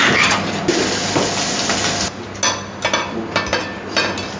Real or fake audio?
real